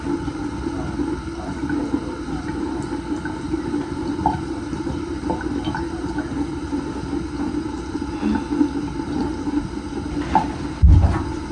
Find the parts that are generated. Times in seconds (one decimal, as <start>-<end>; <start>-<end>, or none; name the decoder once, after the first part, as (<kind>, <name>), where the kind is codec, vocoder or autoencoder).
8.8-9.4 (vocoder, BigVGAN v2)